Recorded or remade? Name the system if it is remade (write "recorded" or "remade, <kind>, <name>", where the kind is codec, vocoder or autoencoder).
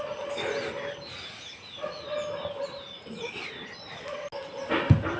recorded